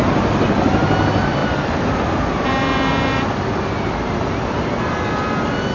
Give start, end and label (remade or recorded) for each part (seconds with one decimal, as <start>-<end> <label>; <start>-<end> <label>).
0.0-1.4 recorded; 1.4-3.7 remade; 3.7-5.7 recorded